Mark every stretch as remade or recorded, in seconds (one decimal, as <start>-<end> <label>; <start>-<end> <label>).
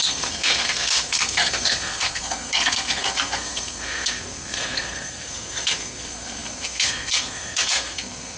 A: 0.0-8.4 remade